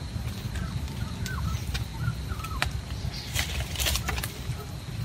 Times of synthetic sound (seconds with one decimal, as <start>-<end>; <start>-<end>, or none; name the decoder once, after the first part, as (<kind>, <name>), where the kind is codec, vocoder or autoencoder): none